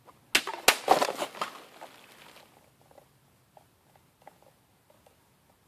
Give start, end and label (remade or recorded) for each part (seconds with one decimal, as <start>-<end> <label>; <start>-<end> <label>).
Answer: 0.0-5.7 recorded